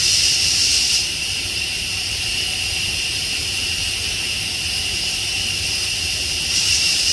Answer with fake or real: fake